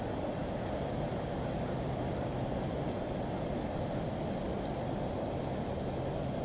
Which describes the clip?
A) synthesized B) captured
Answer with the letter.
B